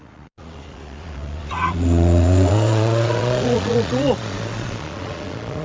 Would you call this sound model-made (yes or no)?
yes